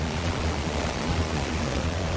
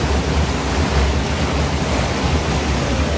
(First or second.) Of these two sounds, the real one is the second